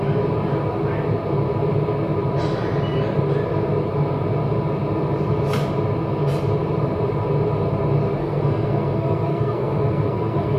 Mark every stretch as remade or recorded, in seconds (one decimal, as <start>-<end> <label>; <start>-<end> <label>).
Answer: 0.0-8.2 recorded; 8.2-10.6 remade